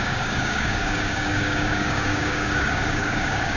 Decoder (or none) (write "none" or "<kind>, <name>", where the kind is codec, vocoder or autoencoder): codec, DAC